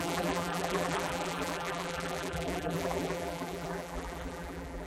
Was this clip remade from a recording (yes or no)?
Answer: yes